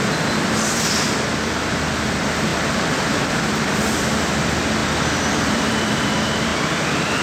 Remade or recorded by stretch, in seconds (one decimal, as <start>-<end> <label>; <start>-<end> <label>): 0.0-2.5 remade; 2.5-3.4 recorded; 3.4-6.5 remade; 6.5-7.2 recorded